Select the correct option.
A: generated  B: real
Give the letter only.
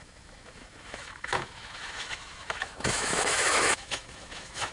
A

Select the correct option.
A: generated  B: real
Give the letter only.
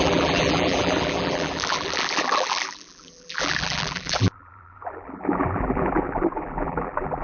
A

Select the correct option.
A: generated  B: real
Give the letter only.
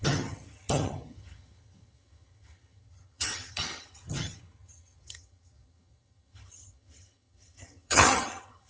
A